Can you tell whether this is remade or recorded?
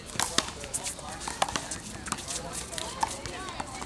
recorded